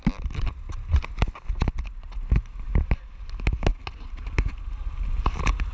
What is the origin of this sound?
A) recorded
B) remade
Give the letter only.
A